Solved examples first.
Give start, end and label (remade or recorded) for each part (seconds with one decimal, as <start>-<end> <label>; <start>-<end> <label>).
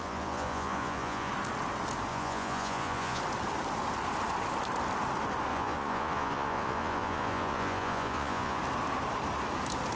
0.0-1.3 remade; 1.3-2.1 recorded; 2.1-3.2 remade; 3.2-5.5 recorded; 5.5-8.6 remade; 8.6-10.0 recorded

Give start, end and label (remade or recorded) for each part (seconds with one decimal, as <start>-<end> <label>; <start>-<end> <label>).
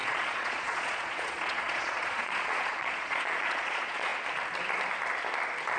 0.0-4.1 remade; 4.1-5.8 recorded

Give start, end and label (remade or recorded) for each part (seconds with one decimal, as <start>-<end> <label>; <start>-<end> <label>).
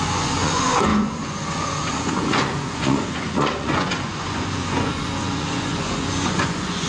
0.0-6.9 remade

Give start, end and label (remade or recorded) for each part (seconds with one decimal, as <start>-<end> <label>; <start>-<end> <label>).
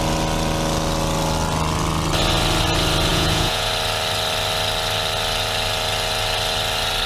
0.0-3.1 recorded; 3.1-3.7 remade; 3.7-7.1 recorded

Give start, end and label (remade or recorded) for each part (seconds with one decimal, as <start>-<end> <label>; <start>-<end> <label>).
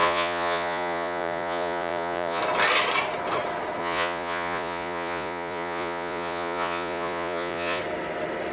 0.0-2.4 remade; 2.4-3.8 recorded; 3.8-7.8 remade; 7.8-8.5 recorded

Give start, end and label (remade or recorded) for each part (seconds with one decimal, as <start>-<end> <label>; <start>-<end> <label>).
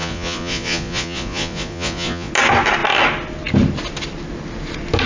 0.0-2.3 remade; 2.3-5.1 recorded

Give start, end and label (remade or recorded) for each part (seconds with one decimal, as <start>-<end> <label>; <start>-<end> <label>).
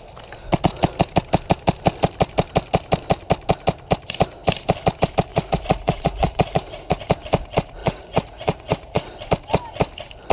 0.0-5.3 recorded; 5.3-7.1 remade; 7.1-7.8 recorded; 7.8-9.1 remade; 9.1-10.3 recorded